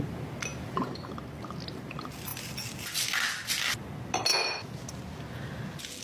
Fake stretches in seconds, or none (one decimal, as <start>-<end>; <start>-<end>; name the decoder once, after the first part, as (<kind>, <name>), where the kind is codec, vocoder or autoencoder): 0.5-1.1 (vocoder, BigVGAN v2)